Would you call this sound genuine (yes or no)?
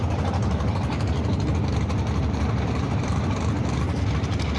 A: no